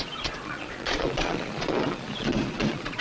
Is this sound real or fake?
fake